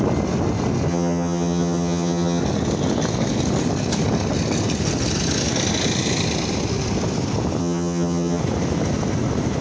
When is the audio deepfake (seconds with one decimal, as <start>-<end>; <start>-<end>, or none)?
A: 0.9-2.4; 7.6-8.4